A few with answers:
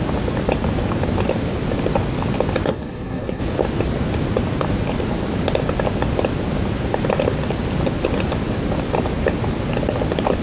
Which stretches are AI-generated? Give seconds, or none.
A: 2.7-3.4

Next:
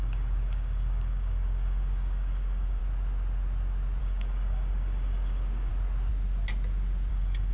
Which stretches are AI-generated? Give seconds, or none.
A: 0.0-2.8; 4.0-5.7; 7.1-7.5

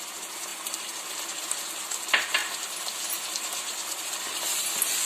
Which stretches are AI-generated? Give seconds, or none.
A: none

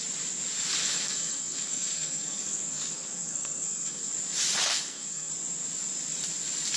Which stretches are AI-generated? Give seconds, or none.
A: 0.8-4.1; 4.7-5.3

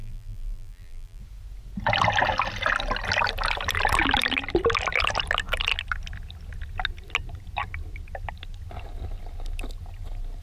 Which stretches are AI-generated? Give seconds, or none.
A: 0.0-1.2

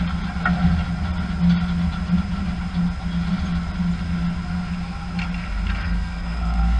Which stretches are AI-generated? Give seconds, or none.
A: 5.8-6.8

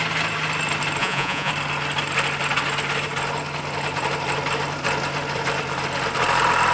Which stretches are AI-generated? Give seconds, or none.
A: 1.0-1.5

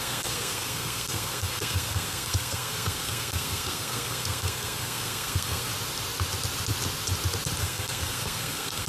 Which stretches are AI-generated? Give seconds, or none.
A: 0.0-5.7; 7.6-8.9